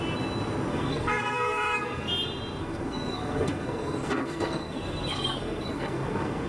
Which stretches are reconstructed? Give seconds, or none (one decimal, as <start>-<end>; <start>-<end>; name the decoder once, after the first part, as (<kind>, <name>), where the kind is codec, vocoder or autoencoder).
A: 0.7-2.1 (codec, SNAC); 2.6-6.5